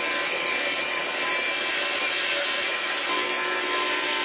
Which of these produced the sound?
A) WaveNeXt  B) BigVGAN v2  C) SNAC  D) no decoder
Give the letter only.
D